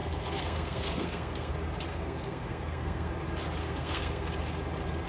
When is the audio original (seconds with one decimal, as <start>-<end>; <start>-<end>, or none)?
1.5-1.9; 3.1-3.6; 4.3-5.1